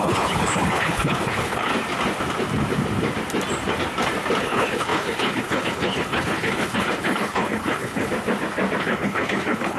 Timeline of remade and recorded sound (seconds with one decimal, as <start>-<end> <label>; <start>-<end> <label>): 0.0-1.7 remade; 1.7-4.4 recorded; 4.4-8.1 remade; 8.1-8.8 recorded; 8.8-9.8 remade